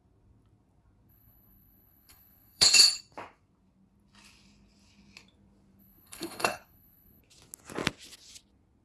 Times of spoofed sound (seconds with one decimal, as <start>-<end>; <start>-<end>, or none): 1.1-3.0; 5.8-7.2